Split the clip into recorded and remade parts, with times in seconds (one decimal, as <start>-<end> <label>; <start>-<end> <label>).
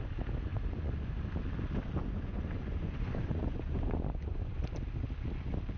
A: 0.0-0.5 recorded; 0.5-1.1 remade; 1.1-2.0 recorded; 2.0-4.6 remade; 4.6-5.8 recorded